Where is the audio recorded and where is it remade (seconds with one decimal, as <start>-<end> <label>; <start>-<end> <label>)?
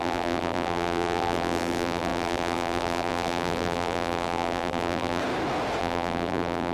0.0-5.2 remade; 5.2-5.8 recorded; 5.8-6.7 remade